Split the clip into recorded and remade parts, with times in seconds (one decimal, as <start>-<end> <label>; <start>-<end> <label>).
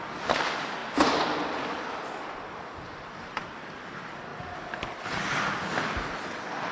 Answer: 0.0-6.7 recorded